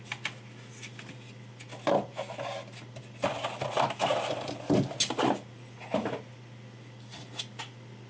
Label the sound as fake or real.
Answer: real